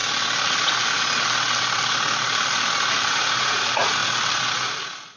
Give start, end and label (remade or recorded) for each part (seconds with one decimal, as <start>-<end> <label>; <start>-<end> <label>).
0.0-3.1 recorded; 3.1-4.0 remade; 4.0-4.5 recorded; 4.5-5.2 remade